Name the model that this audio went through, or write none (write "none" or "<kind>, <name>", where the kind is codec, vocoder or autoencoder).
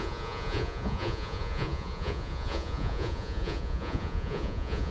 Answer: vocoder, Vocos